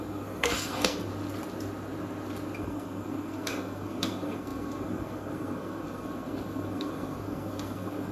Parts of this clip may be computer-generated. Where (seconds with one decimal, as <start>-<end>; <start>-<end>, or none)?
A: 0.0-1.1; 2.6-8.1

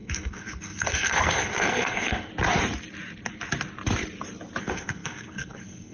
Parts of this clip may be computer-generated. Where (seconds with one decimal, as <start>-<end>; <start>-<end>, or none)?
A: 0.0-2.3; 4.6-5.9

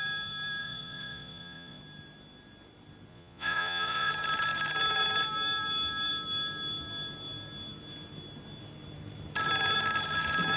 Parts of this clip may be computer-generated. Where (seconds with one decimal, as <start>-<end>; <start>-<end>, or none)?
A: 0.6-1.8; 3.1-4.1

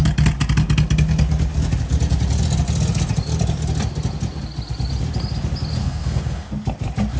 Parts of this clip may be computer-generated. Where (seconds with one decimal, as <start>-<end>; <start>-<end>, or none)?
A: 5.8-6.5

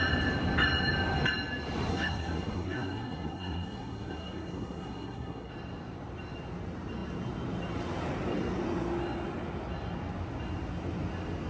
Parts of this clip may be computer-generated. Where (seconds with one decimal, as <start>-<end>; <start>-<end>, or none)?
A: 1.9-5.5

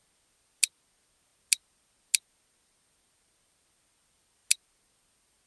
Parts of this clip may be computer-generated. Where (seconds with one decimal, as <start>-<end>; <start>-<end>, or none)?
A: none

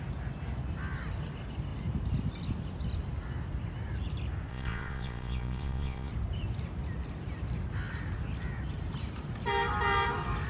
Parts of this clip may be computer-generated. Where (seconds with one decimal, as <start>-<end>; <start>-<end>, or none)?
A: 4.5-6.1

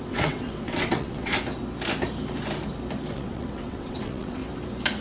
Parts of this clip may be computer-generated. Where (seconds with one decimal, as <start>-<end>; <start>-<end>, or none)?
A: 0.0-1.3; 3.1-4.4